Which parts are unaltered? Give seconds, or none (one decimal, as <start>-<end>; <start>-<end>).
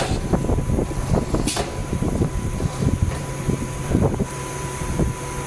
0.0-1.8; 5.0-5.5